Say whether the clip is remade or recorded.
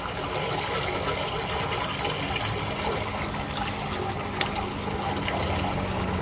recorded